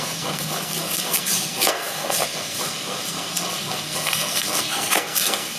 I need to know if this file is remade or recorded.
remade